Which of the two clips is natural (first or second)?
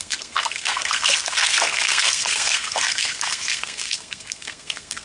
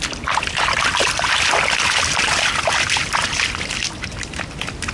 second